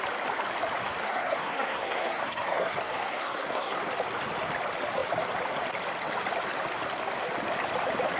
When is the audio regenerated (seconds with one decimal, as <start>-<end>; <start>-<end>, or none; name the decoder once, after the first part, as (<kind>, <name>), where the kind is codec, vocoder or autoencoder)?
1.0-3.8 (codec, SNAC)

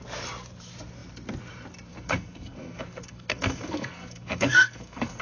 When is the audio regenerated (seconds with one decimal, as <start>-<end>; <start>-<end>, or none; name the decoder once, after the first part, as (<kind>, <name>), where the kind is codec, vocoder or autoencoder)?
1.9-5.2 (codec, SNAC)